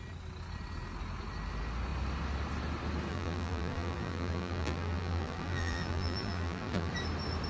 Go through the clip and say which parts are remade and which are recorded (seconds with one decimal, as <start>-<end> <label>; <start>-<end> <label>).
0.0-3.1 recorded; 3.1-6.9 remade; 6.9-7.5 recorded